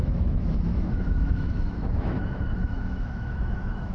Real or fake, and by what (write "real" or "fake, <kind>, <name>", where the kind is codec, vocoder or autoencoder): fake, autoencoder, DAC-VAE